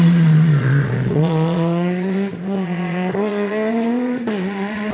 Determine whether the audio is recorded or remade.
remade